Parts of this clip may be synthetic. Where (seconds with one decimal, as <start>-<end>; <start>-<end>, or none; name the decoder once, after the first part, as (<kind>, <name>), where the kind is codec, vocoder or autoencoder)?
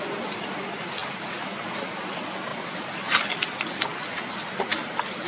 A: none